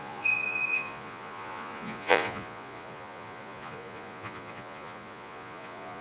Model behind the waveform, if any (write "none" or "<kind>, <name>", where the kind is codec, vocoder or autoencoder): vocoder, Vocos